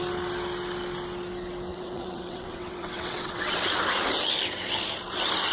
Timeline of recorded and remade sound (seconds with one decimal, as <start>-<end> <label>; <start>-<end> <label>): 0.0-1.7 recorded; 1.7-3.6 remade; 3.6-5.5 recorded